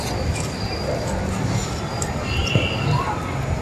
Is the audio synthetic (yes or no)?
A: no